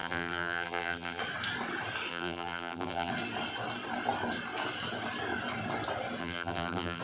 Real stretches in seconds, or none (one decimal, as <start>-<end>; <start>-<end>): 1.2-2.1; 3.1-6.2